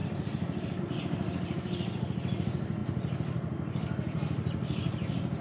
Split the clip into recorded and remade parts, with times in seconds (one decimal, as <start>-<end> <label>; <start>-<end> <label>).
0.0-5.4 recorded